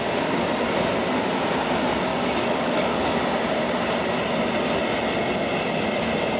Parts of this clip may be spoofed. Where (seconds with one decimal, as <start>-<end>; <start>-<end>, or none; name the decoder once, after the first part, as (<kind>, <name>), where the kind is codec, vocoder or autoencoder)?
2.1-3.1 (codec, DAC)